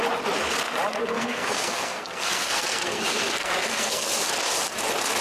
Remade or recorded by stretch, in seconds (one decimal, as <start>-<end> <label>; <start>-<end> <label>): 0.0-1.0 recorded; 1.0-4.1 remade; 4.1-5.2 recorded